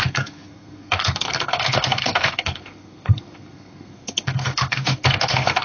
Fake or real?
fake